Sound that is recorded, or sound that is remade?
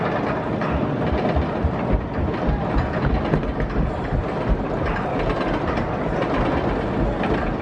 recorded